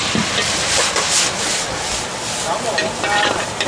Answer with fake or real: real